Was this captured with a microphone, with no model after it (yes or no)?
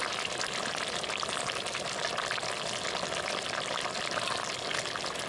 yes